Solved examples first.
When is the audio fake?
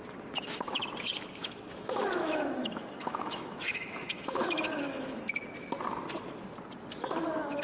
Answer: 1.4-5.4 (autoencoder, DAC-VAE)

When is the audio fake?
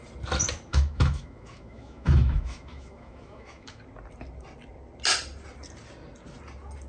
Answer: 0.7-3.8 (autoencoder, DAC-VAE)